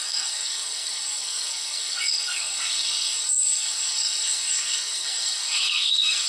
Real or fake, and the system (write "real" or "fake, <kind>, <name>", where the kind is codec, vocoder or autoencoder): fake, codec, SNAC